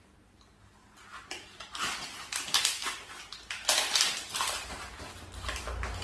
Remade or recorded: recorded